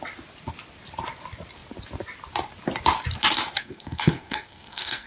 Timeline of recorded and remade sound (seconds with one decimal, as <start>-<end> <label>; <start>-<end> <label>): 0.0-3.6 recorded; 3.6-5.1 remade